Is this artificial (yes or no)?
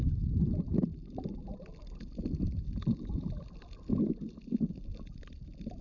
no